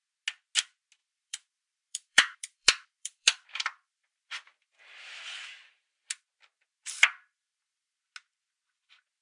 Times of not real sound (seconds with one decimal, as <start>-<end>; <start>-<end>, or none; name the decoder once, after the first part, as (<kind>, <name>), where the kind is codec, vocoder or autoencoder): 1.0-4.8 (vocoder, BigVGAN v2); 6.8-8.0